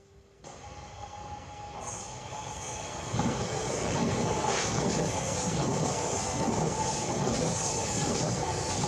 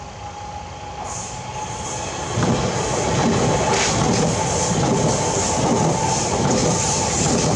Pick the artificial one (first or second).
first